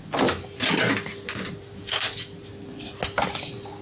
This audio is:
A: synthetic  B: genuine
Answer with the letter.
B